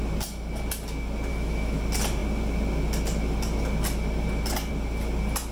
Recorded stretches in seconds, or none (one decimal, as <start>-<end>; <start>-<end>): 0.0-1.3; 1.8-5.5

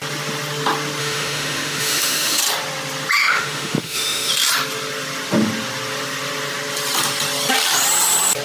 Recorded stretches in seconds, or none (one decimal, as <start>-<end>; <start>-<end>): 0.0-1.0; 2.4-3.2; 4.3-8.4

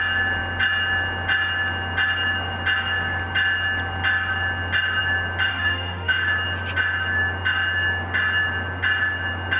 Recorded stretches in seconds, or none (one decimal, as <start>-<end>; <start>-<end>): 0.0-5.5; 6.1-9.6

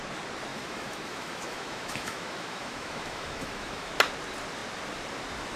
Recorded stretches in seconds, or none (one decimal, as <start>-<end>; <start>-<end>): 0.0-0.5; 3.9-5.6